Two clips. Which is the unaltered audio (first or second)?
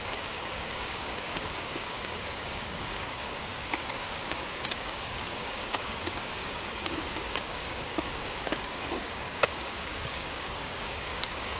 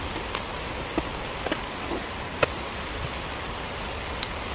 second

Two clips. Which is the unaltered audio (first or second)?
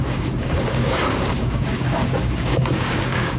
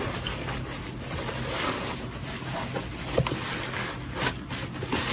second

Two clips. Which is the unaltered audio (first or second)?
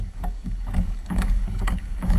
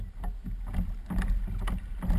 second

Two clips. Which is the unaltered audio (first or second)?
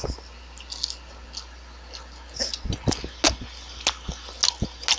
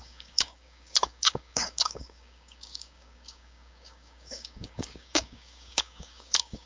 first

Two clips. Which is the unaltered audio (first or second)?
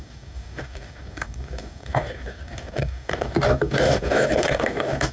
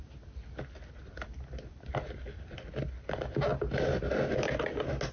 second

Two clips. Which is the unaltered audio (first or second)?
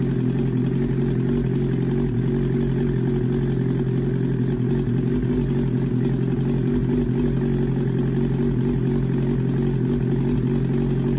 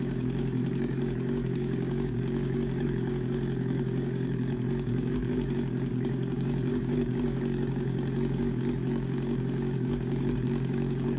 first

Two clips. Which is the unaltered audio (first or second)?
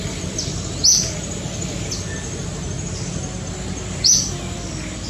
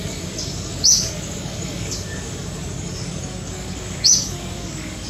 first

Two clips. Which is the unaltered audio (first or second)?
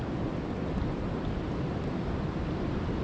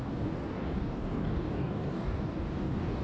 first